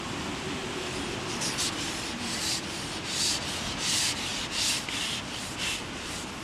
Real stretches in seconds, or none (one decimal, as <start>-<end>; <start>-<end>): 0.0-6.4